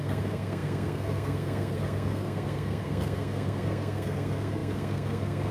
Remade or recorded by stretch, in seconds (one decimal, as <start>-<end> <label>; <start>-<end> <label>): 0.0-5.5 remade